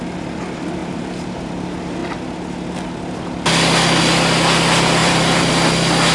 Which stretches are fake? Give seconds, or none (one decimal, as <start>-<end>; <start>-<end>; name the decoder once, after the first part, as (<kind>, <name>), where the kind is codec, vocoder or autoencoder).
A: 0.8-1.5 (vocoder, BigVGAN v2); 5.0-5.5